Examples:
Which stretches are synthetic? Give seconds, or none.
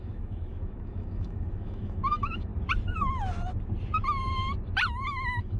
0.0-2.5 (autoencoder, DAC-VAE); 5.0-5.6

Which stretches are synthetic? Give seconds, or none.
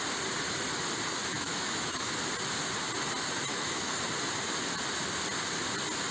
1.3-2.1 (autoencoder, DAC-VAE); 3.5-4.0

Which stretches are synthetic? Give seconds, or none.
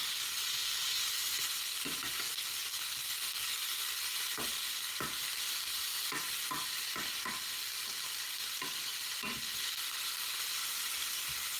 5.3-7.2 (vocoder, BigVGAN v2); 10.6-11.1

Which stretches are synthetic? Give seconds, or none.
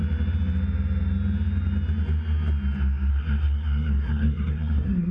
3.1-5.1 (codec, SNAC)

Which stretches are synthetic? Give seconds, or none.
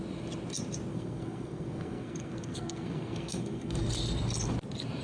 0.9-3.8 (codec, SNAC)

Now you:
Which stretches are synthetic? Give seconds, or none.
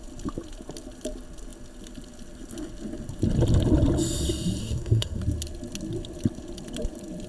4.6-5.2 (codec, SNAC)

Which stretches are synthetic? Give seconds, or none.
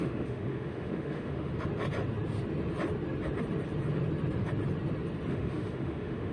0.0-1.5 (autoencoder, DAC-VAE); 5.3-6.3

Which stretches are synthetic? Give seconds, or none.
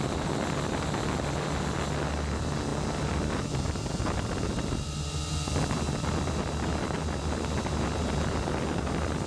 none